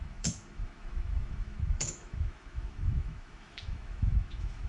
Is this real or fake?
fake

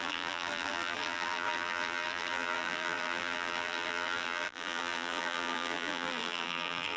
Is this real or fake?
fake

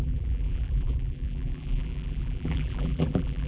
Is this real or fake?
fake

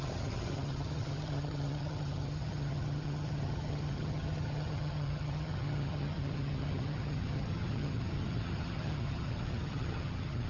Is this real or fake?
fake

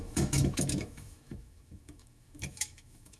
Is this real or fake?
fake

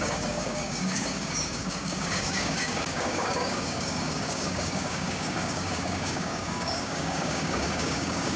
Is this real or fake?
fake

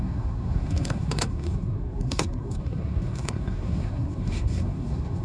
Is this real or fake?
fake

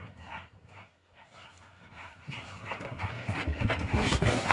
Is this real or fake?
fake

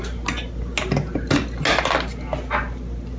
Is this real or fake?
real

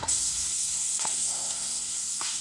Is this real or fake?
fake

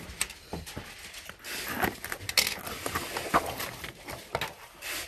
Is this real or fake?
real